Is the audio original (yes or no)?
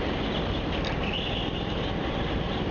yes